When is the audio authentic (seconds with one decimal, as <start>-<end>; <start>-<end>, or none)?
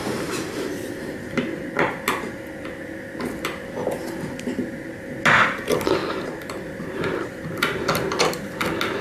0.0-9.0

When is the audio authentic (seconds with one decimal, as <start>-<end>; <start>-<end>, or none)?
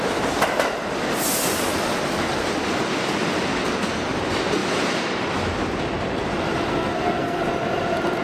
0.0-6.7; 7.4-8.2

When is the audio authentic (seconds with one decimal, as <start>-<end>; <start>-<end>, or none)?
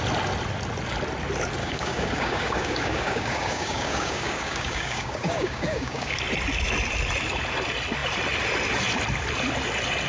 0.0-1.6; 6.2-10.1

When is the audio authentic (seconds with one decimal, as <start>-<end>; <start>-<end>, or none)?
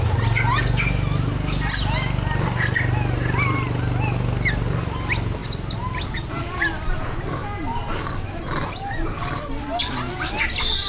0.0-7.9; 8.4-10.9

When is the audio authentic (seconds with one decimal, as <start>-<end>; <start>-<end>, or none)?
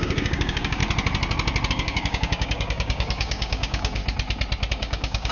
0.8-1.7; 4.0-4.7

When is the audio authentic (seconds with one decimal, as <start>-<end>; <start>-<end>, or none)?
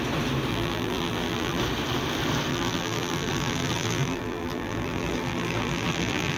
0.0-0.5; 1.6-2.5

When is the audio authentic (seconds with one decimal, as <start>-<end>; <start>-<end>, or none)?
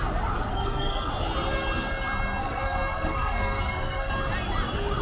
0.0-0.5; 1.1-2.4; 4.1-5.0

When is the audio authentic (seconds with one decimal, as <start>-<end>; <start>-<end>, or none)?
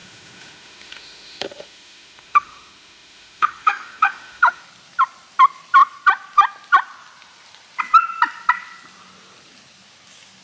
4.6-10.4